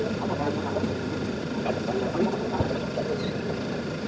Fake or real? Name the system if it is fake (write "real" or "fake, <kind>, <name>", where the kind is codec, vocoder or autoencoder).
fake, vocoder, BigVGAN v2